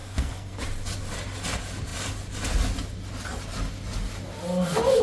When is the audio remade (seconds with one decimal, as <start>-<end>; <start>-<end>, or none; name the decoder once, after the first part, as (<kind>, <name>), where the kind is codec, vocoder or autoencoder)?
0.0-0.6 (codec, SNAC)